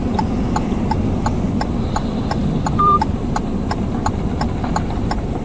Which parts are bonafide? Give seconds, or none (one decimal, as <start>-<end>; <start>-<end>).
0.0-2.4; 3.2-5.4